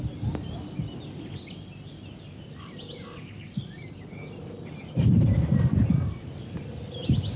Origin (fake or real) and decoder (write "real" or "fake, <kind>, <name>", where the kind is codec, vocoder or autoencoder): real